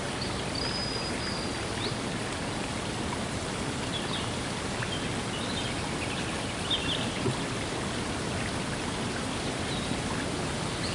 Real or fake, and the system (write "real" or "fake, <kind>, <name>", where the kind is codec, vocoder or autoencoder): real